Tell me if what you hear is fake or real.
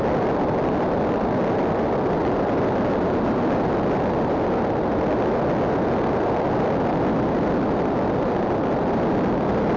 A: real